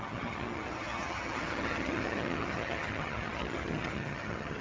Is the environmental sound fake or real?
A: fake